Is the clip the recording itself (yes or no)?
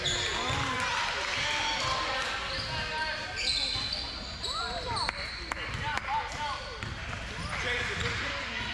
yes